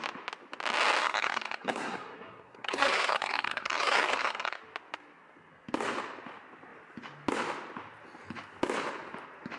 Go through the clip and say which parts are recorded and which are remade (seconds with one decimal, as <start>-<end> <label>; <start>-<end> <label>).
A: 0.0-1.0 recorded; 1.0-4.6 remade; 4.6-9.6 recorded

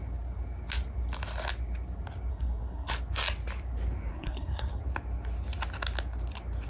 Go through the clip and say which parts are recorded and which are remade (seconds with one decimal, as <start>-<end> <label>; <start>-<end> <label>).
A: 0.0-2.3 recorded; 2.3-2.9 remade; 2.9-4.1 recorded; 4.1-4.8 remade; 4.8-6.7 recorded

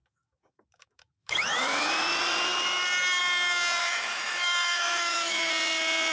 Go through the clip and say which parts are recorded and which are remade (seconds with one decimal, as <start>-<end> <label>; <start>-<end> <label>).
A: 0.0-1.9 remade; 1.9-3.8 recorded; 3.8-5.5 remade; 5.5-6.1 recorded

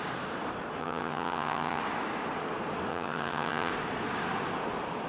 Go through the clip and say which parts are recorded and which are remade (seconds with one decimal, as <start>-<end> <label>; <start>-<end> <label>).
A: 0.0-0.8 recorded; 0.8-1.8 remade; 1.8-2.9 recorded; 2.9-3.7 remade; 3.7-5.1 recorded

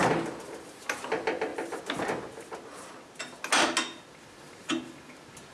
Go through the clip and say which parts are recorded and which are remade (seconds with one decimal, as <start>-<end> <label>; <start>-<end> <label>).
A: 0.0-5.5 recorded

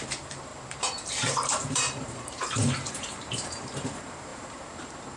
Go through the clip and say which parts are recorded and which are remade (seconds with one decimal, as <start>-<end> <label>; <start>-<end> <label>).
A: 0.0-5.2 remade

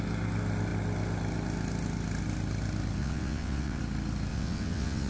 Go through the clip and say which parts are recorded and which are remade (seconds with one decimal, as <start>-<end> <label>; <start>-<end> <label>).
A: 0.0-3.0 recorded; 3.0-3.8 remade; 3.8-4.3 recorded; 4.3-5.1 remade

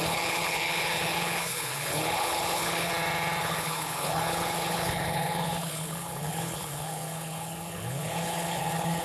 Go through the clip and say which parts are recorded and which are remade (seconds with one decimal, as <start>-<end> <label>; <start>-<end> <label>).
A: 0.0-2.9 remade; 2.9-3.4 recorded; 3.4-9.0 remade